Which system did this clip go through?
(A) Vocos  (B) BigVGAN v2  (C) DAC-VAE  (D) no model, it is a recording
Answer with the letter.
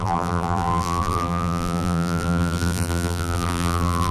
B